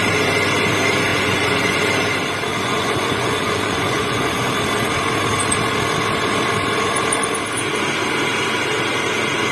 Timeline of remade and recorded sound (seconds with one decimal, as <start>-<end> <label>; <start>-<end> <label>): 0.0-1.1 recorded; 1.1-1.8 remade; 1.8-2.5 recorded; 2.5-4.5 remade; 4.5-9.5 recorded

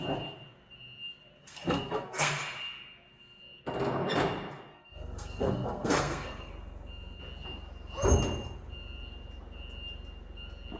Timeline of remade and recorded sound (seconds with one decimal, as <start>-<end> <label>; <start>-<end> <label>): 0.0-1.4 recorded; 1.4-2.3 remade; 2.3-4.7 recorded; 4.7-6.5 remade; 6.5-10.8 recorded